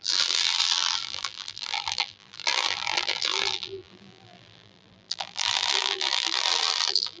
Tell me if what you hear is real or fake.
fake